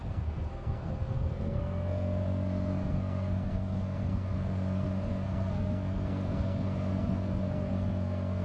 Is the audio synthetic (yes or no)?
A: yes